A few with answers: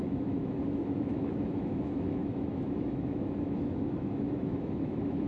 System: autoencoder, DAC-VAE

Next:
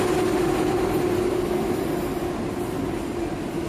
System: none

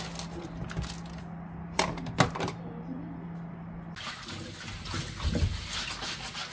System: none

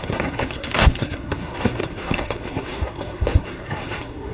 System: codec, SNAC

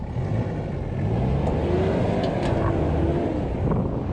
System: none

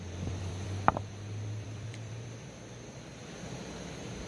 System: vocoder, BigVGAN v2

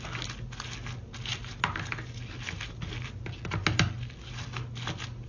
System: none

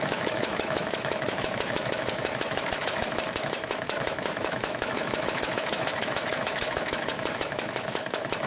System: autoencoder, DAC-VAE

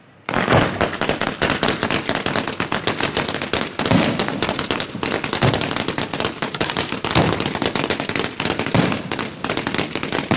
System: none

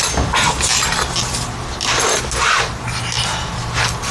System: none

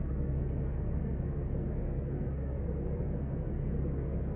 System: codec, SNAC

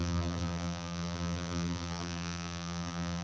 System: vocoder, BigVGAN v2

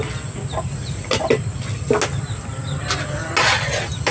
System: none